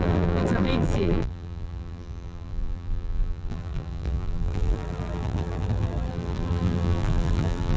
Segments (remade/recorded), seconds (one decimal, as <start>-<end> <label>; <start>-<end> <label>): 0.0-7.8 remade